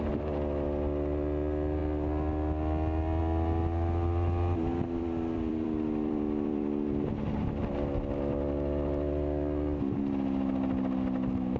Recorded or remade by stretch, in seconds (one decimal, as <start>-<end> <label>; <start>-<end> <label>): 0.0-4.7 recorded; 4.7-7.0 remade; 7.0-11.6 recorded